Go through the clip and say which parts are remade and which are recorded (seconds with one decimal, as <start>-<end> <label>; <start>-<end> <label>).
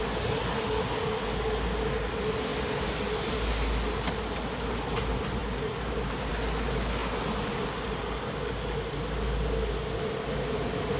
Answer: 0.0-11.0 recorded